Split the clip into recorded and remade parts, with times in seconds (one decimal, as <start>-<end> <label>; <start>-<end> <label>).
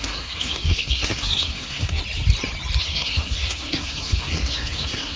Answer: 0.0-2.0 remade; 2.0-2.8 recorded; 2.8-5.2 remade